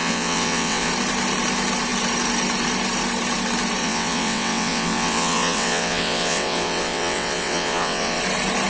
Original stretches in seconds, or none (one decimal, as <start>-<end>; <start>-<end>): 0.9-3.8; 8.2-8.7

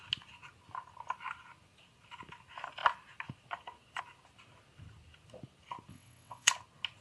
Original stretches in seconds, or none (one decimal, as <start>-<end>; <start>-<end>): 0.0-5.9; 6.5-7.0

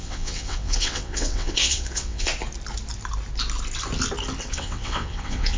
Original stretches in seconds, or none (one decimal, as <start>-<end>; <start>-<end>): 2.3-4.5

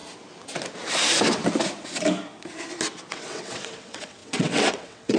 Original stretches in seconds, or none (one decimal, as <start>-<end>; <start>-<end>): 0.0-3.1

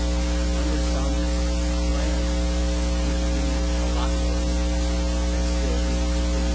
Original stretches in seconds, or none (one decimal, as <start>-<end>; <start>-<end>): 0.0-6.5